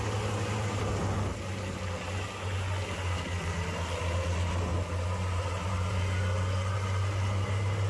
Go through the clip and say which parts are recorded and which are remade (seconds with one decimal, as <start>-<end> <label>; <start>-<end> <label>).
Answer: 0.0-1.3 recorded; 1.3-1.8 remade; 1.8-4.7 recorded; 4.7-6.0 remade; 6.0-7.9 recorded